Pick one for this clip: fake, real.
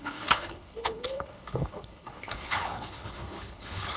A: fake